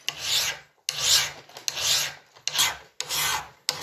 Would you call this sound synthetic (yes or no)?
no